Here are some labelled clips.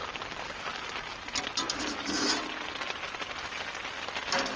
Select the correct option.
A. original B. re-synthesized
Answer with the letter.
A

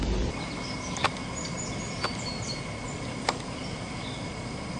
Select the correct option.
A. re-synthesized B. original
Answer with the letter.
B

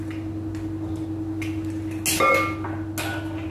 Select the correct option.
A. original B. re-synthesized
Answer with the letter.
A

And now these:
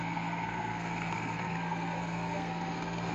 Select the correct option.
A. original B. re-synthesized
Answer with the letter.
B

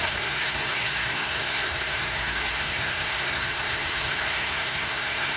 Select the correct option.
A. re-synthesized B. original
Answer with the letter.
A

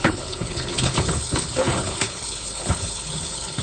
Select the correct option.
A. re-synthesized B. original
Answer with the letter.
A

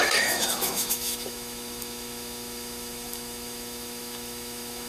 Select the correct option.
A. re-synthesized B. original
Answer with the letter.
A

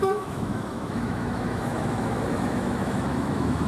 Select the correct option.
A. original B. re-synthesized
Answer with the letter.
B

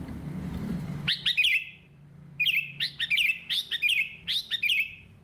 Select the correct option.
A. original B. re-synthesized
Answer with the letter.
B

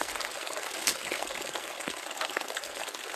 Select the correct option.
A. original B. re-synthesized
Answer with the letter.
B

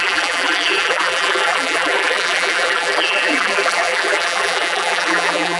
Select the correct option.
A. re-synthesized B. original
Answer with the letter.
A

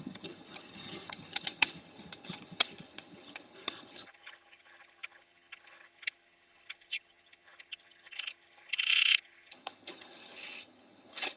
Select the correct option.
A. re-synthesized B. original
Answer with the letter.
A